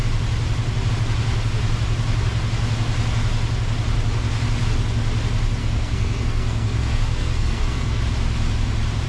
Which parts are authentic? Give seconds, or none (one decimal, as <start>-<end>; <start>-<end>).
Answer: 0.0-5.6; 8.0-9.1